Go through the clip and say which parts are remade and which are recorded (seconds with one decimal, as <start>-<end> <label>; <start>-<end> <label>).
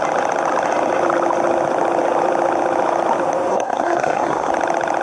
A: 0.0-3.5 recorded; 3.5-4.5 remade; 4.5-5.0 recorded